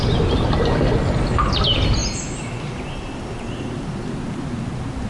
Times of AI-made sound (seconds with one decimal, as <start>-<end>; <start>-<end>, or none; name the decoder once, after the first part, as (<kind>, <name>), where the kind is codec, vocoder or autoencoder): none